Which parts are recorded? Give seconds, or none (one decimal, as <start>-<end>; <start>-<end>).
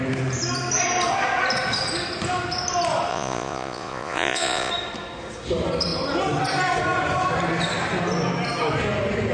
0.0-3.1; 4.7-9.3